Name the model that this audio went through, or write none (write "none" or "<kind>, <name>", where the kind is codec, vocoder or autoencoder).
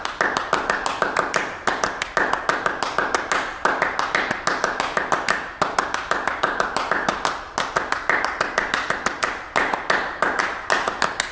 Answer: none